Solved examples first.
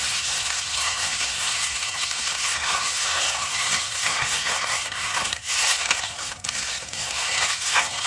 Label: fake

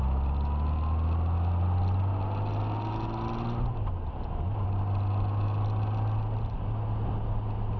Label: real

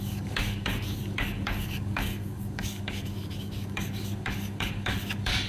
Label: fake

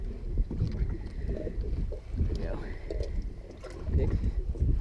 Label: real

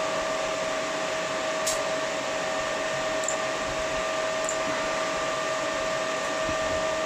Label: real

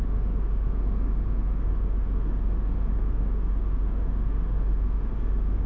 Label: fake